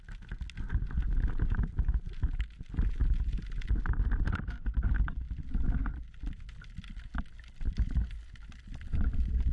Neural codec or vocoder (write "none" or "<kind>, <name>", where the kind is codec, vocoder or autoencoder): none